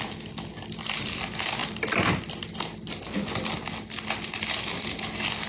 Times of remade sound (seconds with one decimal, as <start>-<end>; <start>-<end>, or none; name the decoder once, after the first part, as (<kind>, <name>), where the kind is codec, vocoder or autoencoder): none